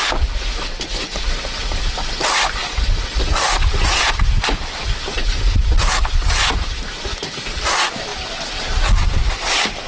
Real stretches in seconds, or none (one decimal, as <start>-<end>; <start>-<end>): 0.0-9.9